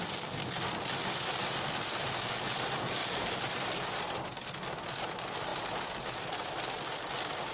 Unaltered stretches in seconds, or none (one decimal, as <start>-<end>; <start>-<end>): 0.0-1.0; 2.2-3.0; 5.1-5.5; 6.2-7.5